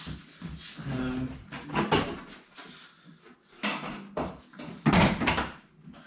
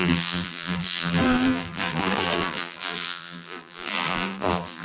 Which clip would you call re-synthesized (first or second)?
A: second